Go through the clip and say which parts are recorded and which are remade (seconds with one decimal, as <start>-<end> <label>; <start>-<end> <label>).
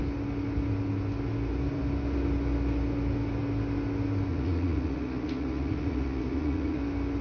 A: 0.0-4.3 recorded; 4.3-6.8 remade; 6.8-7.2 recorded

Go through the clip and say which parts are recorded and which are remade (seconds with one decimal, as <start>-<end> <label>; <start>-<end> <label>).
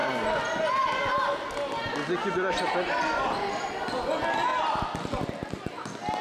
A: 0.0-3.7 recorded; 3.7-4.5 remade; 4.5-5.5 recorded; 5.5-6.2 remade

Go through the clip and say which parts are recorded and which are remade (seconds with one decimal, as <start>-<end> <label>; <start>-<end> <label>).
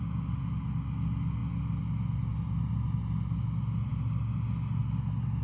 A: 0.0-5.4 recorded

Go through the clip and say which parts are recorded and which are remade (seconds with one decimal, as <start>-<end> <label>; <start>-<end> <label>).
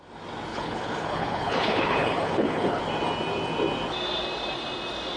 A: 0.0-0.5 recorded; 0.5-2.8 remade; 2.8-5.2 recorded